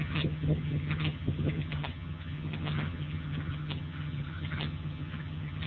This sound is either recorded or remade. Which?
remade